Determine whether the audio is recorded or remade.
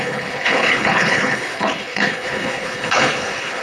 remade